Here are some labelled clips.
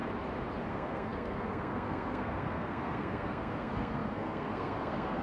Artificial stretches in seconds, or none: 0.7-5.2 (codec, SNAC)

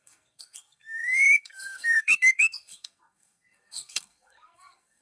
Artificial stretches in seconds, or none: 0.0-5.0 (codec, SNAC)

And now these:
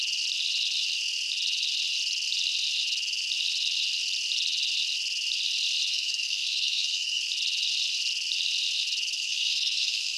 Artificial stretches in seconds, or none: 5.9-7.2 (codec, SNAC); 9.1-10.2

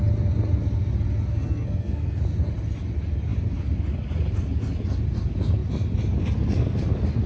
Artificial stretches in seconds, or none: 1.3-2.2 (codec, SNAC)